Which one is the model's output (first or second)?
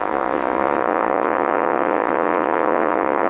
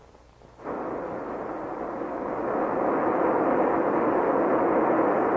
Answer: first